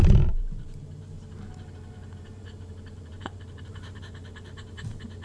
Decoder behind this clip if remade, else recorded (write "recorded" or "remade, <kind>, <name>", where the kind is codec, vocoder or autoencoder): remade, vocoder, BigVGAN v2